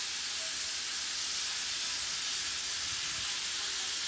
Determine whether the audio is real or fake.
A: real